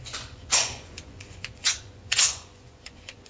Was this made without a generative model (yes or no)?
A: no